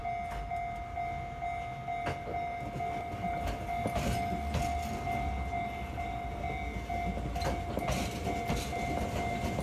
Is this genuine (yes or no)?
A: yes